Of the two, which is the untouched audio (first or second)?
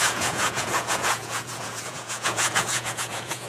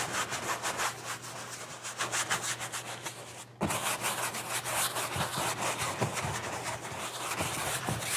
second